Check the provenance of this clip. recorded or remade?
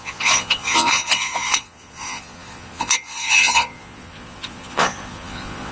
remade